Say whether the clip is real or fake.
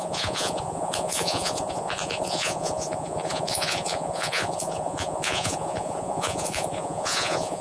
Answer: fake